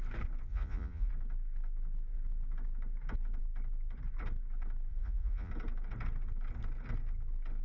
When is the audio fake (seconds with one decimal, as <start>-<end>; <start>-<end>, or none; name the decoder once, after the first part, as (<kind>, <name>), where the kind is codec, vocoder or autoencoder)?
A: 0.5-1.1 (vocoder, Vocos); 4.9-5.5